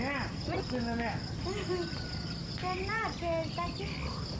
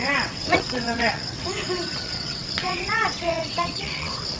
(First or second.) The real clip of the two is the first